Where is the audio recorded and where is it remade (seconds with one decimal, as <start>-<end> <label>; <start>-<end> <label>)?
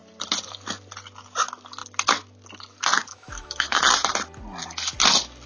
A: 0.0-3.1 recorded; 3.1-3.8 remade; 3.8-5.5 recorded